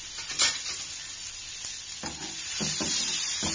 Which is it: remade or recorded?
recorded